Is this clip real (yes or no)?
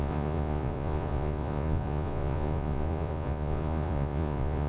no